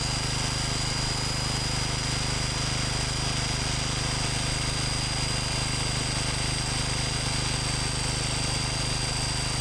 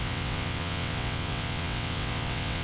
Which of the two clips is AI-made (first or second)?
second